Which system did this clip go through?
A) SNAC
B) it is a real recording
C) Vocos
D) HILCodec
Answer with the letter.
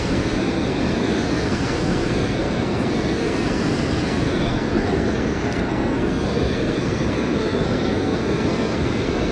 A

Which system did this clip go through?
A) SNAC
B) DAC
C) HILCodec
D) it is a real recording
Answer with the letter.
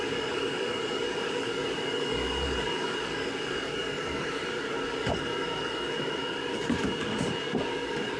B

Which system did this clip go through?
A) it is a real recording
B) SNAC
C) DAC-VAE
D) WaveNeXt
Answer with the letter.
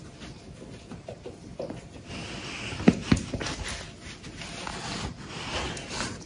A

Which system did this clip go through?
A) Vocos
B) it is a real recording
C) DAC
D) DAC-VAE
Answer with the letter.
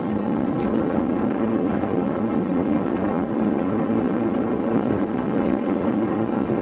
A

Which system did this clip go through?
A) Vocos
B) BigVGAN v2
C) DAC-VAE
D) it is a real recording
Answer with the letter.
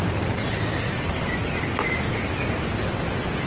D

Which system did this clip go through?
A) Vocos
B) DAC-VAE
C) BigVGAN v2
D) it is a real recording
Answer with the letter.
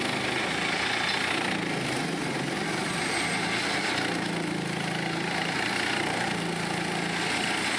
D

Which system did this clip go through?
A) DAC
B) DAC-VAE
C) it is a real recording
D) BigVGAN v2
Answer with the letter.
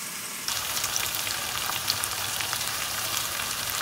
D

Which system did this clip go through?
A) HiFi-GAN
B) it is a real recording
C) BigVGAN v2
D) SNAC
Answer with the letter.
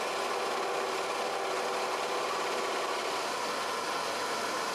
B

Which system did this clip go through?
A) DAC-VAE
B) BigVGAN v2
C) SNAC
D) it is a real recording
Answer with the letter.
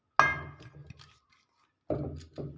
D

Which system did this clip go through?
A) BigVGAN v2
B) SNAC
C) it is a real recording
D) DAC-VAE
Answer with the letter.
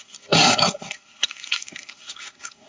B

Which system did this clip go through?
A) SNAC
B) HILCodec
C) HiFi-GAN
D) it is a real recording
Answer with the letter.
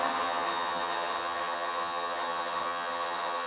C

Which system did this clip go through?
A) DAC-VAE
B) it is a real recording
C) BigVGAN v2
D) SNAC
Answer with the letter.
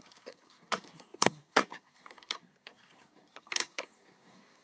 D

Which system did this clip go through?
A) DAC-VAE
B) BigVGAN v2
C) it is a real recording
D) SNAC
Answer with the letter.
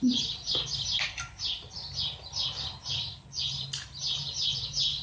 C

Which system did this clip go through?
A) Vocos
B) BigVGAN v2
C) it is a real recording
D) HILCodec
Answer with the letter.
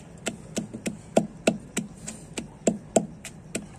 C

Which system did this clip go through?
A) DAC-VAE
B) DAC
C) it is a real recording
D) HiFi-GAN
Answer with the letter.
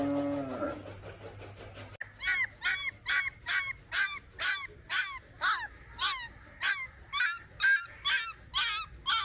C